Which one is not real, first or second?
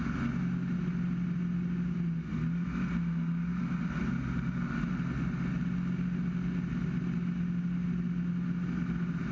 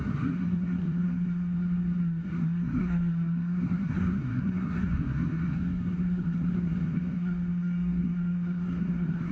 second